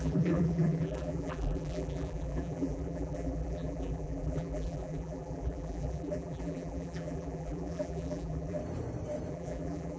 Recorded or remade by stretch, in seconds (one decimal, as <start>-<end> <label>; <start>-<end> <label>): 0.0-8.6 remade; 8.6-9.3 recorded; 9.3-10.0 remade